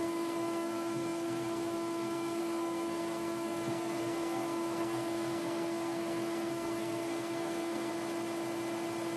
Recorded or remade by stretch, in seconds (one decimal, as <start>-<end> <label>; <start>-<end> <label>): 0.0-7.9 remade; 7.9-9.2 recorded